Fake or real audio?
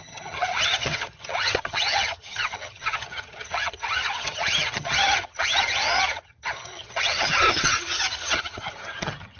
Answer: fake